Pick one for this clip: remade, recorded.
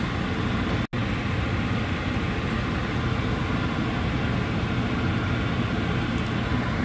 recorded